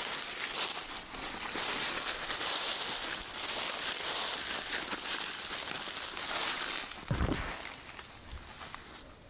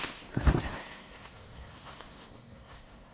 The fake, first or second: second